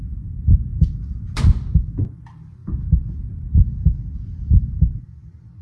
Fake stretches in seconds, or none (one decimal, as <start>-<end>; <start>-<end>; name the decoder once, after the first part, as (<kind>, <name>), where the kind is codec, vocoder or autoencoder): 0.7-1.4 (vocoder, BigVGAN v2)